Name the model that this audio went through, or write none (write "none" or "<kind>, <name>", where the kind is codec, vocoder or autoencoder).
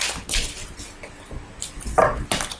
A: none